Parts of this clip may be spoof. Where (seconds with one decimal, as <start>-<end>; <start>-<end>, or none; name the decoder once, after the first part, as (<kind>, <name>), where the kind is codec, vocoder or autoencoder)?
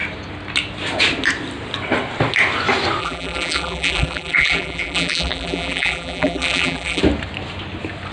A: 3.0-7.0 (vocoder, BigVGAN v2)